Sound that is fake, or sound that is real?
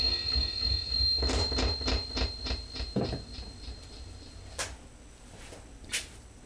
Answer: real